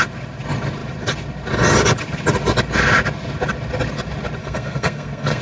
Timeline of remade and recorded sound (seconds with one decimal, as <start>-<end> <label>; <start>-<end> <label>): 0.0-4.4 recorded; 4.4-5.4 remade